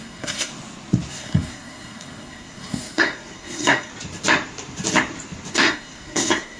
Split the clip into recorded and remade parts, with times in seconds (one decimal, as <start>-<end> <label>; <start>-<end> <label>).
0.0-0.5 remade; 0.5-1.1 recorded; 1.1-3.9 remade; 3.9-5.5 recorded; 5.5-6.6 remade